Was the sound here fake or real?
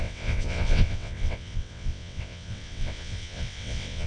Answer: fake